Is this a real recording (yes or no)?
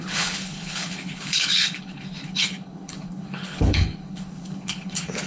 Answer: no